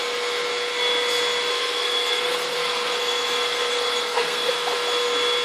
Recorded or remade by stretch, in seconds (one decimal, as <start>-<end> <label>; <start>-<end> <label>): 0.0-1.5 recorded; 1.5-4.5 remade; 4.5-5.4 recorded